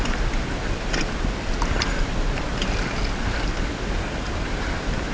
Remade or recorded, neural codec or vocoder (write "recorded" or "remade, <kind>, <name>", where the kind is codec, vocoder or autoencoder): recorded